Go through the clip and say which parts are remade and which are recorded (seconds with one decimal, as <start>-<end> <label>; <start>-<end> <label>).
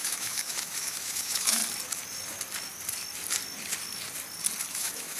0.0-1.6 remade; 1.6-4.7 recorded; 4.7-5.2 remade